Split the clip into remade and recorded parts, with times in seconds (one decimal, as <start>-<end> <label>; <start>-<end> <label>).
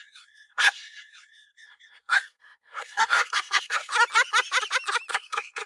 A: 0.0-3.9 remade; 3.9-5.1 recorded; 5.1-5.7 remade